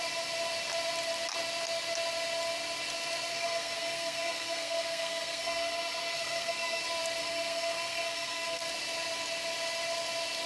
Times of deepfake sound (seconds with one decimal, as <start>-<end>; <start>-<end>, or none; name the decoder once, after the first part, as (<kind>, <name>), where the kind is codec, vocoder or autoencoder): 3.3-6.8 (codec, SNAC); 7.2-8.6